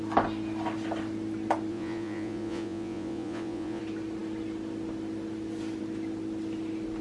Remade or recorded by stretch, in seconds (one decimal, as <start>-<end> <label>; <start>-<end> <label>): 0.0-1.7 recorded; 1.7-3.8 remade; 3.8-7.0 recorded

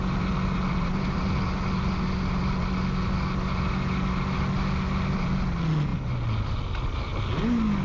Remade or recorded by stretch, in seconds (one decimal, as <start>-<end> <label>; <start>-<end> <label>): 0.0-7.8 recorded

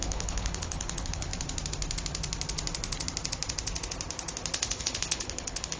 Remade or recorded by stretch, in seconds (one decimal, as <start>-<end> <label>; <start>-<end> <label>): 0.0-1.3 remade; 1.3-4.8 recorded; 4.8-5.8 remade

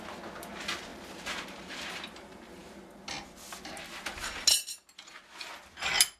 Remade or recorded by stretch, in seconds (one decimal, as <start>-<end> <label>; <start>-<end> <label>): 0.0-6.2 recorded

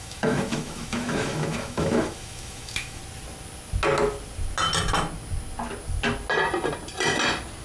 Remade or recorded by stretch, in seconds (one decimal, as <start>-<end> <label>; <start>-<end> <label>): 0.0-3.0 remade; 3.0-7.6 recorded

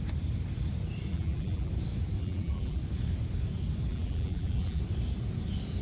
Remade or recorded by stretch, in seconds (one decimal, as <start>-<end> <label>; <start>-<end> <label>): 0.0-1.1 recorded; 1.1-1.7 remade; 1.7-2.2 recorded; 2.2-2.8 remade; 2.8-3.9 recorded; 3.9-4.8 remade; 4.8-5.8 recorded

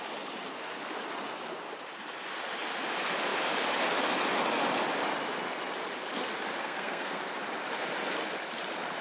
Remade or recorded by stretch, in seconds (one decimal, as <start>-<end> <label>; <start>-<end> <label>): 0.0-6.6 recorded; 6.6-7.2 remade; 7.2-9.0 recorded